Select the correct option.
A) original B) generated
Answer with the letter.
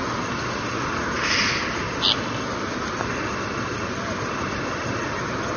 A